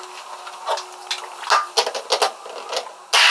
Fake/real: real